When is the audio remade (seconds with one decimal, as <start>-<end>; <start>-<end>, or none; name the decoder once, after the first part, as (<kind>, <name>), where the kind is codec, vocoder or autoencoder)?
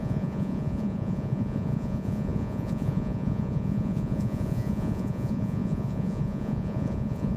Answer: 0.0-7.4 (vocoder, Vocos)